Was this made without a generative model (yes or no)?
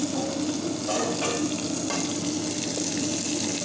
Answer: yes